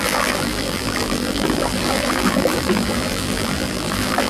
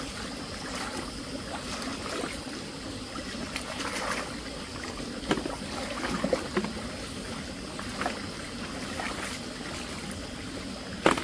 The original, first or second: second